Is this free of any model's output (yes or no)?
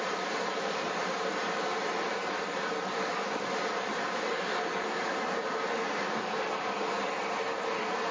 no